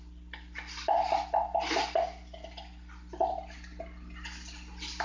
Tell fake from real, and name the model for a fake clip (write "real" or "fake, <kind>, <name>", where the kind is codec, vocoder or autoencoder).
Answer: real